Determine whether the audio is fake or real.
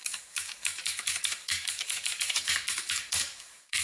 fake